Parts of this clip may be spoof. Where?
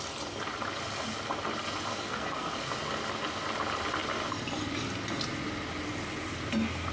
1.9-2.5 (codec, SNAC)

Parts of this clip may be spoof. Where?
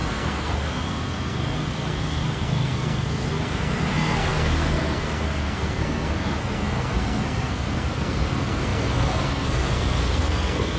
0.0-10.8 (codec, SNAC)